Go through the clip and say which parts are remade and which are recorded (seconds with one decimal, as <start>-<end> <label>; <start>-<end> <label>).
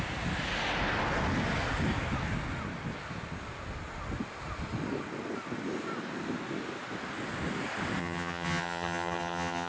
0.0-8.0 recorded; 8.0-9.7 remade